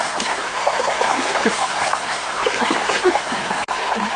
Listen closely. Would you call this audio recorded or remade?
remade